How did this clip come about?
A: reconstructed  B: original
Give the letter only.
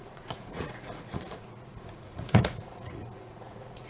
A